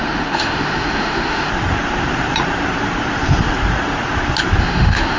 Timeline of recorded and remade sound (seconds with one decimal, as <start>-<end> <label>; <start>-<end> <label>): 0.0-1.5 remade; 1.5-4.6 recorded; 4.6-5.2 remade